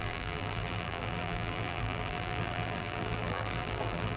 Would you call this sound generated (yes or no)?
yes